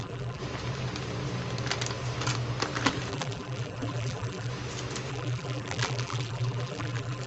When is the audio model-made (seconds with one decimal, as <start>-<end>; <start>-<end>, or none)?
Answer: 0.0-0.4; 3.1-4.5; 5.1-7.3